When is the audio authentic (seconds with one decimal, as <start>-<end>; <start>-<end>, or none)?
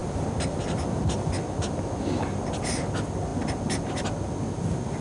0.0-5.0